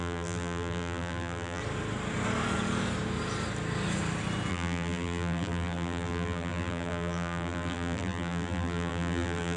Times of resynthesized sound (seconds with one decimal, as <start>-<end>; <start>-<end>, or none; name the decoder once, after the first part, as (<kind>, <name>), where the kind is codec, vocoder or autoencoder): 0.0-1.6 (vocoder, BigVGAN v2); 4.5-9.6